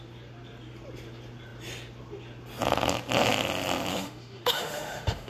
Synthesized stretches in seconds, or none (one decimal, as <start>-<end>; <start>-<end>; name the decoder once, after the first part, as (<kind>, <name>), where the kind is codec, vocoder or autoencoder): 3.9-5.3 (autoencoder, DAC-VAE)